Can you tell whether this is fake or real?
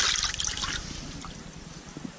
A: real